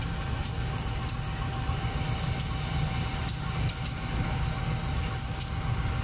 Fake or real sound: real